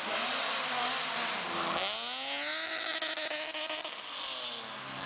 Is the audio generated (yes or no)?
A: no